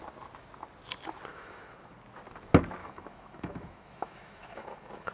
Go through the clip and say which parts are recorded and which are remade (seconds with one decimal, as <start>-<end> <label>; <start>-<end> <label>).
0.0-1.3 recorded; 1.3-1.9 remade; 1.9-2.8 recorded; 2.8-5.1 remade